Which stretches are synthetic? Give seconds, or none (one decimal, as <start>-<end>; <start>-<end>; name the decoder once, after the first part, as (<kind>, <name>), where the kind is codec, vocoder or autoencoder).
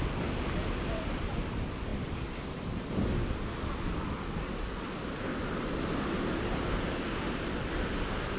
none